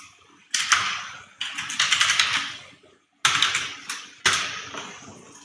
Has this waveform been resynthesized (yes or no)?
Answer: no